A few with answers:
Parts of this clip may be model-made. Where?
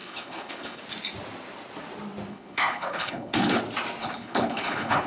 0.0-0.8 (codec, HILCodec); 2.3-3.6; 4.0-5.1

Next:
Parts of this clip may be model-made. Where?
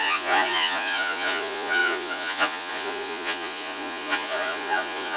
0.0-5.2 (vocoder, Vocos)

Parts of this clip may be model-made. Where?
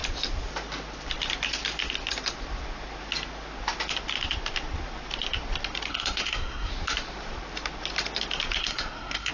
5.9-6.7 (codec, SNAC); 8.6-9.3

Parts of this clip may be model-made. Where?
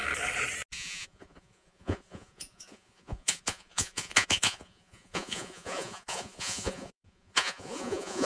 0.7-8.2 (vocoder, Vocos)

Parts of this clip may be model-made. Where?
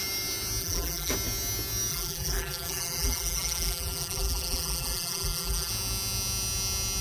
0.6-1.1 (vocoder, BigVGAN v2); 1.9-5.7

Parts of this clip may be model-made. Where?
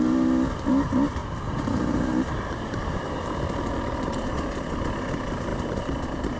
1.2-4.3 (vocoder, BigVGAN v2); 5.5-6.4